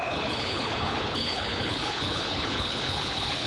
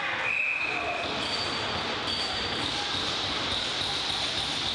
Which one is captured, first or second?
second